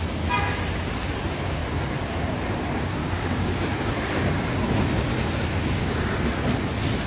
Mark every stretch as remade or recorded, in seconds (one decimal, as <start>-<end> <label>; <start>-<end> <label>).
0.0-3.0 recorded; 3.0-3.9 remade; 3.9-7.1 recorded